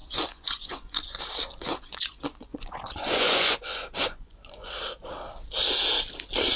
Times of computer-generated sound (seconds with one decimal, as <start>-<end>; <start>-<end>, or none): 0.0-1.2; 1.7-4.7